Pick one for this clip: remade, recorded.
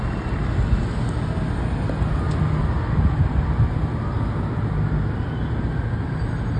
recorded